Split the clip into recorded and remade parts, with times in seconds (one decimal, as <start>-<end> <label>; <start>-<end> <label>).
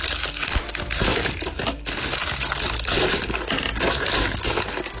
0.0-1.1 recorded; 1.1-4.1 remade; 4.1-5.0 recorded